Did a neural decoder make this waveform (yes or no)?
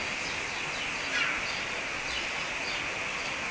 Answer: no